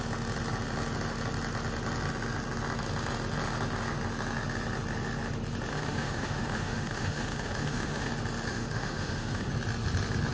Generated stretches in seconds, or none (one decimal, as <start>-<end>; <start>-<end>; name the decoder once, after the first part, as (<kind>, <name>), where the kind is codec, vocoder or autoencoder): 5.7-8.1 (autoencoder, DAC-VAE); 8.5-9.5